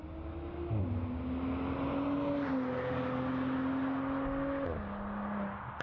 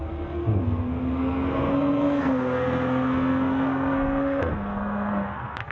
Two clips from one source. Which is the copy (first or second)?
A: second